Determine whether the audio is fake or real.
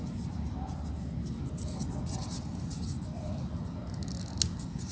real